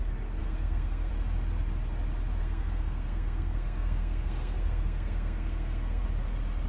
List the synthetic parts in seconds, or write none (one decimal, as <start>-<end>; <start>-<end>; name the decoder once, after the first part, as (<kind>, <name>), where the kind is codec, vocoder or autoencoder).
0.4-1.1 (codec, SNAC); 2.4-6.0